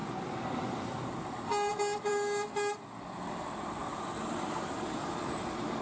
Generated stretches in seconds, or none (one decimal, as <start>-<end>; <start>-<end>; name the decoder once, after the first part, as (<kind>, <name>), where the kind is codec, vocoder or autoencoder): none